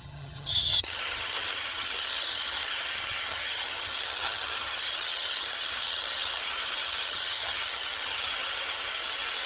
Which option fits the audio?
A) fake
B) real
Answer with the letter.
A